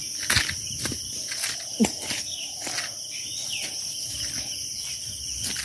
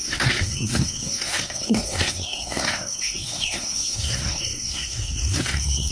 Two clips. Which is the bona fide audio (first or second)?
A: first